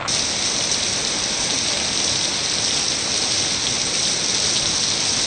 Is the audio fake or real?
real